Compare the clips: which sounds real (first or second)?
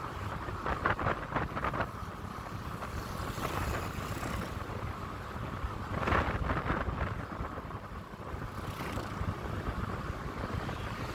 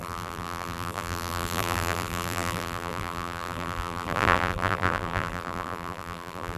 first